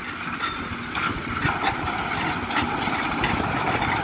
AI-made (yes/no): no